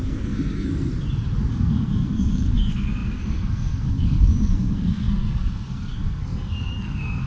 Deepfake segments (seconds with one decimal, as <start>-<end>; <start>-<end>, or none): 0.0-0.9; 1.5-7.3